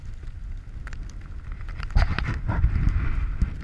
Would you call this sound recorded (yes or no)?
yes